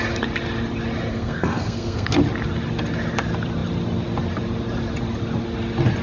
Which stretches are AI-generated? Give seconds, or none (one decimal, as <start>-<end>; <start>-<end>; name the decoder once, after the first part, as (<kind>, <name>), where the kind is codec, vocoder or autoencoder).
1.1-2.2 (codec, SNAC)